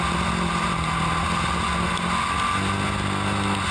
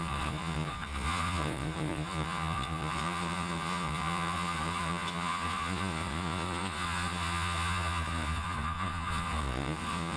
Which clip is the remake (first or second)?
second